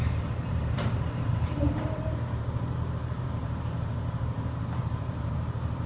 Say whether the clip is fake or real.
fake